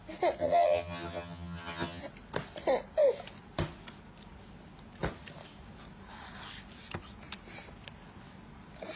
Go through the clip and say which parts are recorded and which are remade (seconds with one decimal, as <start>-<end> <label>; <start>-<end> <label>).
0.0-0.4 recorded; 0.4-2.0 remade; 2.0-9.0 recorded